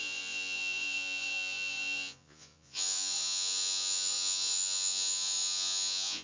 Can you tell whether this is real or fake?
fake